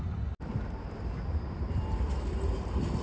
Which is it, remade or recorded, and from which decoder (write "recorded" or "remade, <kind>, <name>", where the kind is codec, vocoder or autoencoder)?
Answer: recorded